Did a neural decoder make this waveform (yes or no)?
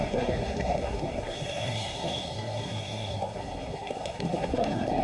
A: yes